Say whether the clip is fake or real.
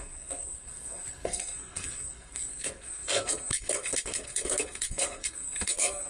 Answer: fake